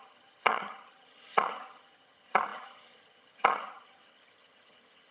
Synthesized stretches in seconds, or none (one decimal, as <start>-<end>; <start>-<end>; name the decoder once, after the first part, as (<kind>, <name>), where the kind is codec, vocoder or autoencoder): 0.0-5.1 (vocoder, HiFi-GAN)